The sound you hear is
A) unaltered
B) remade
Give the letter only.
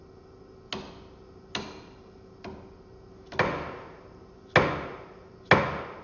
A